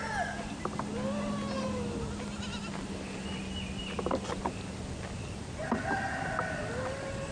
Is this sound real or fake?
real